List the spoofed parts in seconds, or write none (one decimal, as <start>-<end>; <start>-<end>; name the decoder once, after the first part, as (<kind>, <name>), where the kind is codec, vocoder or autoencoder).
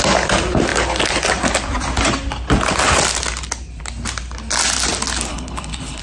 5.3-6.0 (codec, HILCodec)